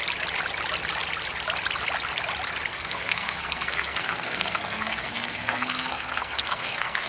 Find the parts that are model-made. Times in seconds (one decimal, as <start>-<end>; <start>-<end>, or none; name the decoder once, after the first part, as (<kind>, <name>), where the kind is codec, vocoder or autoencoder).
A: 2.7-7.1 (codec, SNAC)